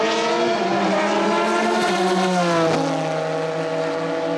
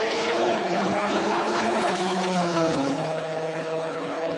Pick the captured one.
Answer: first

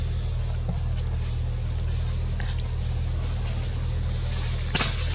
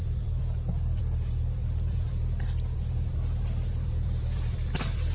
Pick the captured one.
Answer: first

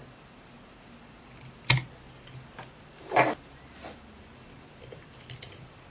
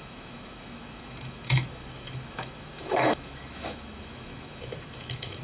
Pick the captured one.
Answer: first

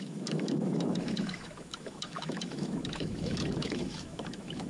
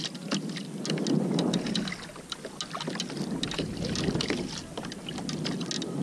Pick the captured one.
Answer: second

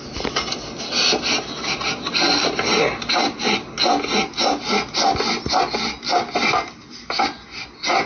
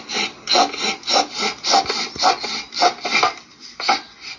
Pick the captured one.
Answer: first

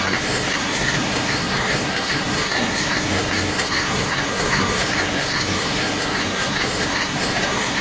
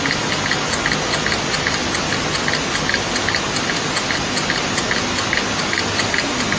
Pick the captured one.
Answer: second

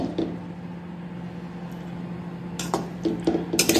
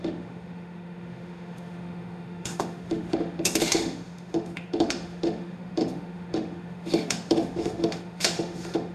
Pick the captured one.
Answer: first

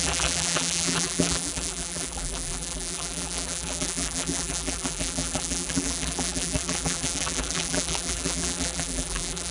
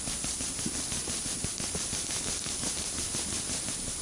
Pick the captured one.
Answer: second